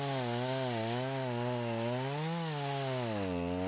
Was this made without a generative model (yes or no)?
yes